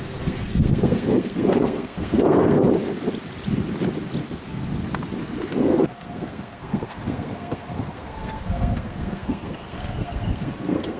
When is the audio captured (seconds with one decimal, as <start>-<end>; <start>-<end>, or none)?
2.6-5.6